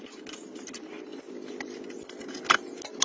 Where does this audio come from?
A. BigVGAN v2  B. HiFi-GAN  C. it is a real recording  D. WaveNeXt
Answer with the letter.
C